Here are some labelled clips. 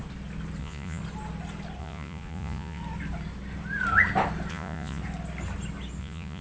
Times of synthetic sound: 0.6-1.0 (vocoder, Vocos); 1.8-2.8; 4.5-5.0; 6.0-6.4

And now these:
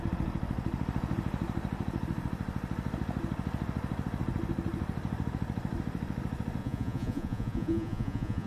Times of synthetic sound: 6.6-8.5 (vocoder, Vocos)

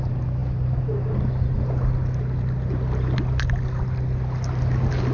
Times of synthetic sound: none